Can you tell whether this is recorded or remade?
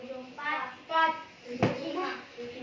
recorded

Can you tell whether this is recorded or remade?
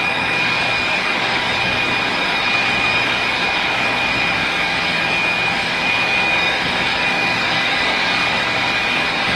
remade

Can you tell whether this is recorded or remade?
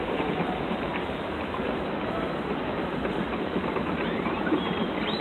remade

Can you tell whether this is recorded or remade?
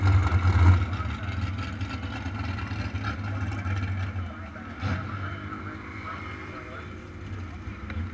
recorded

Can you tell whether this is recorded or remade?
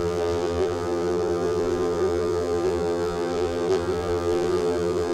remade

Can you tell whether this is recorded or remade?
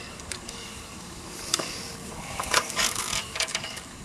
remade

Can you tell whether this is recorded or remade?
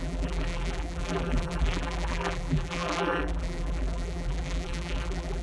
remade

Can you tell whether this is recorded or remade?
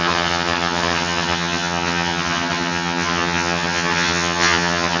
remade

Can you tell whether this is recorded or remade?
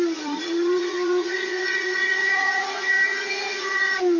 remade